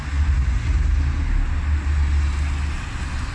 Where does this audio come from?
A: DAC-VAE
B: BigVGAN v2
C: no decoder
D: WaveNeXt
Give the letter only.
C